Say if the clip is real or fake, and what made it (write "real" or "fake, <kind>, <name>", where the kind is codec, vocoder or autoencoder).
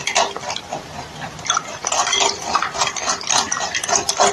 real